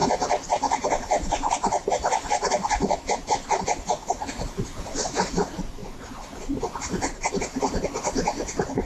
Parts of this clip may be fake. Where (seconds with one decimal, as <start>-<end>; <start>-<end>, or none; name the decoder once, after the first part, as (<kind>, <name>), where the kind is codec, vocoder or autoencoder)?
none